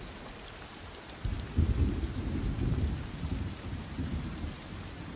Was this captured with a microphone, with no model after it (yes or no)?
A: no